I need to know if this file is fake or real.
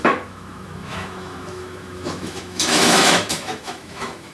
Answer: fake